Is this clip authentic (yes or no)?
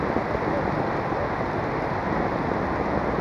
yes